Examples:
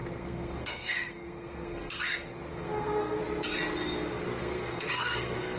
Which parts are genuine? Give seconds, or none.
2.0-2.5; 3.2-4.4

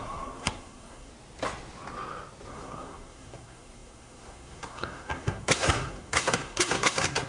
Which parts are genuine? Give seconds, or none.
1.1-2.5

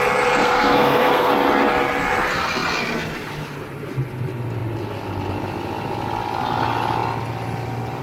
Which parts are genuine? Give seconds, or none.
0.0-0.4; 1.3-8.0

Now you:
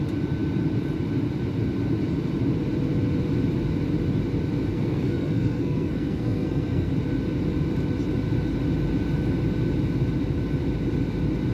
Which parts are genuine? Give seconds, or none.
0.0-4.7; 6.9-11.5